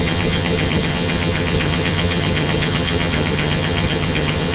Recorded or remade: remade